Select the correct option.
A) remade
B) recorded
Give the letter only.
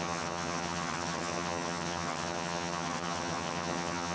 A